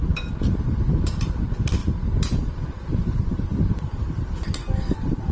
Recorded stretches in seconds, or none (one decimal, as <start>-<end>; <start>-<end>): 0.0-5.3